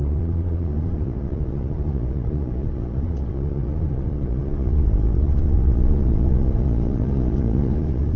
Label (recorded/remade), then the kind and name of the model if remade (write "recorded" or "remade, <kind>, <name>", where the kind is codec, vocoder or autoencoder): remade, vocoder, Vocos